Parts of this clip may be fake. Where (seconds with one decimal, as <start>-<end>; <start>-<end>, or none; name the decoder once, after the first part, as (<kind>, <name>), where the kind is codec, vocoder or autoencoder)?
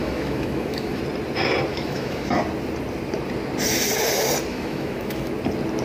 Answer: 0.0-1.0 (autoencoder, DAC-VAE); 1.7-2.4; 4.5-5.3